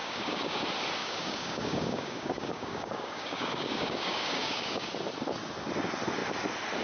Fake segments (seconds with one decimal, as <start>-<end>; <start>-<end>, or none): 0.0-0.6; 1.0-4.9